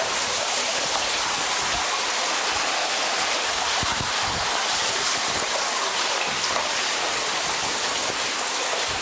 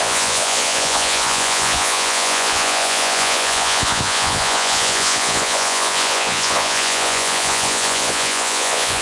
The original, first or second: first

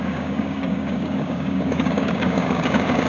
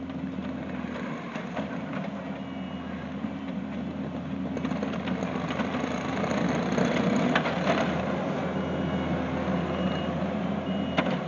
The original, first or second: second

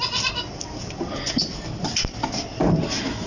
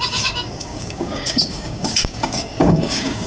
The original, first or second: first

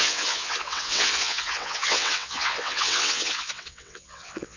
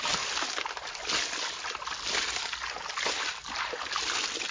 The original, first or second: second